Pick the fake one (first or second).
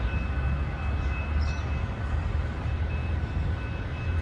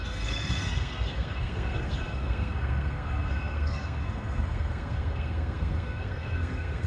second